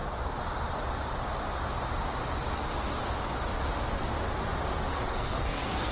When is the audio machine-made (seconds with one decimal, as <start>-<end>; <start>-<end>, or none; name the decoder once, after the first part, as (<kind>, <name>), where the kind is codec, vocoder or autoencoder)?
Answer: 4.9-5.9 (codec, SNAC)